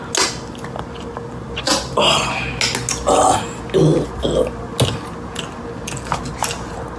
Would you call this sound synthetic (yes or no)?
no